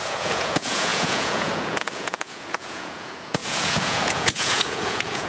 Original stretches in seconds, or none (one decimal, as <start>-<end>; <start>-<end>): none